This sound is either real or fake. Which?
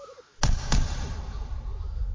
real